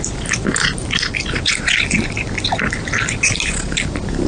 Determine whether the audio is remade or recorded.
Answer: recorded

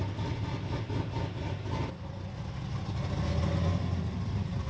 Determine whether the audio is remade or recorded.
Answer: recorded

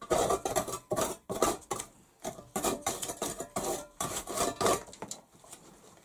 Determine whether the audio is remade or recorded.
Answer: remade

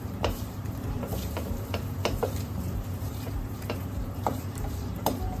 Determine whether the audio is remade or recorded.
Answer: remade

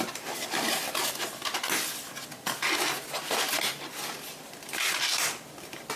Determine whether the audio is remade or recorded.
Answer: remade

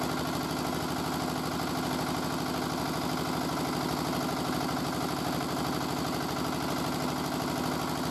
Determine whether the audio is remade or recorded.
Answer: recorded